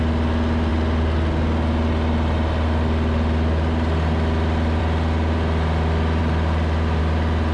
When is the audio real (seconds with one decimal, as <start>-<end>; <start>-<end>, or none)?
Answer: 0.0-7.5